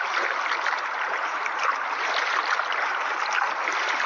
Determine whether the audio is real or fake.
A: real